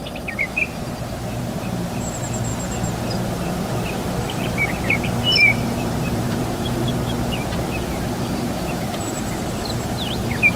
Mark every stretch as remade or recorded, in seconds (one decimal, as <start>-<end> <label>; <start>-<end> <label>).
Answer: 0.0-0.6 remade; 0.6-1.4 recorded; 1.4-2.5 remade; 2.5-4.7 recorded; 4.7-6.9 remade; 6.9-8.6 recorded; 8.6-10.6 remade